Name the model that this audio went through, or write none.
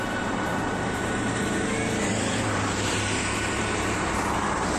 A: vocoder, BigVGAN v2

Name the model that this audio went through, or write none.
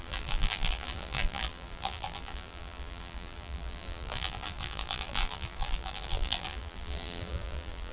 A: vocoder, BigVGAN v2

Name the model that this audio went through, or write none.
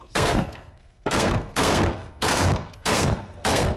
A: codec, SNAC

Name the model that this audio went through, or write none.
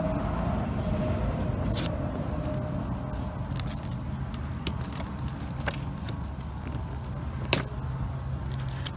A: none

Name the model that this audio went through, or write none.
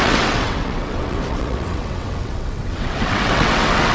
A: vocoder, WaveNeXt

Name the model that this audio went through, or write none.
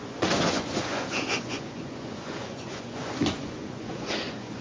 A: vocoder, Vocos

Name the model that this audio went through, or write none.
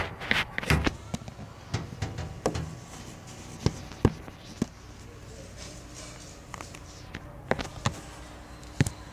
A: none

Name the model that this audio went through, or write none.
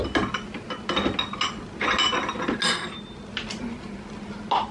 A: none